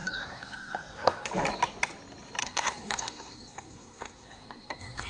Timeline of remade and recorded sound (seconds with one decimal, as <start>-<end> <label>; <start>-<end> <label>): 0.0-1.3 remade; 1.3-2.4 recorded; 2.4-5.1 remade